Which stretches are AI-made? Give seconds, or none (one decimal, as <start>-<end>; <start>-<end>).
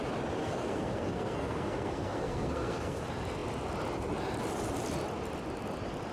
0.4-3.0